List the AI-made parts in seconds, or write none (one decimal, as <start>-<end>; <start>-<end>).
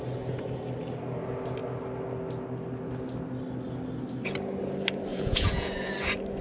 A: 5.1-5.9